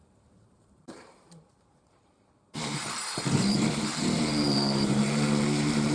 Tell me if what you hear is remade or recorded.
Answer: remade